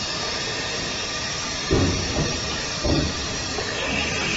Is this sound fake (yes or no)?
no